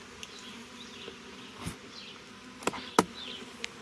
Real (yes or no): yes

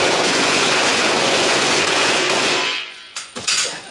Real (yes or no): no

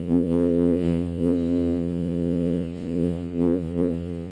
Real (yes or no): no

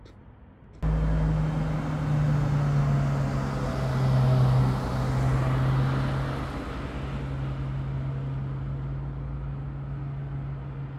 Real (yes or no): yes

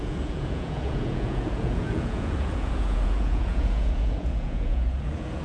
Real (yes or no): no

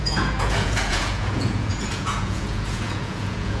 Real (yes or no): no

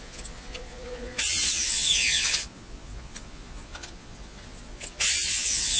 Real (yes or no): no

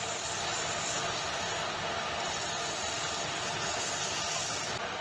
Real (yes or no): yes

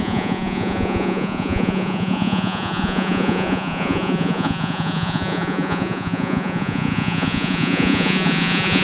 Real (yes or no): no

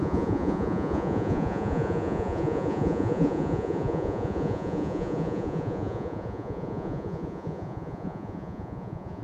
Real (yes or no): no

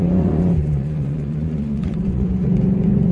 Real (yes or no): no